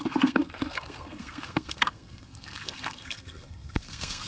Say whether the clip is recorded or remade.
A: remade